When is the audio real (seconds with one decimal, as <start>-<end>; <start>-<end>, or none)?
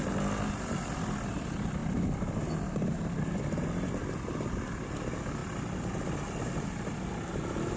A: 0.0-7.8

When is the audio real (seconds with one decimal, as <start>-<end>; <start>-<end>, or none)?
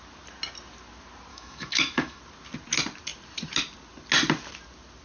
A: 0.0-1.3; 2.2-5.0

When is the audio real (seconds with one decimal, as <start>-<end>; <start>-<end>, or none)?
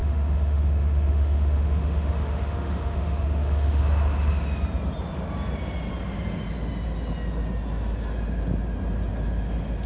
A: 3.8-9.9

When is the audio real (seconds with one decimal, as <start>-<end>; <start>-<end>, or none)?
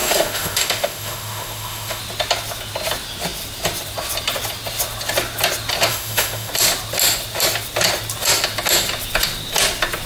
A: 2.0-5.9; 6.5-10.1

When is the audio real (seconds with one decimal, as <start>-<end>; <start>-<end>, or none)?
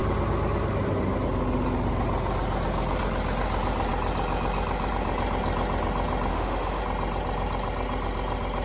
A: 0.0-6.3; 6.8-8.6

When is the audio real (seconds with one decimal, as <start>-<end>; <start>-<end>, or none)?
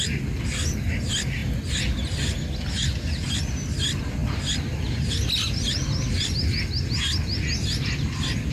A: 0.0-8.5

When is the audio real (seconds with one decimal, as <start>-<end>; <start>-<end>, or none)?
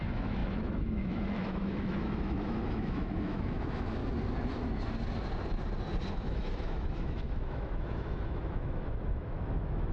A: 4.0-6.1